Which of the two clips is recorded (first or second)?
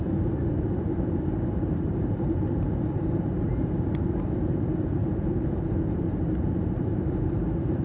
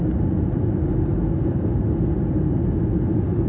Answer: second